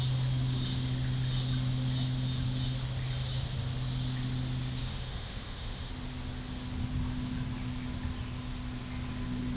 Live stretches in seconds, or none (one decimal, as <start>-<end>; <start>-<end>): 0.0-4.8; 5.9-9.6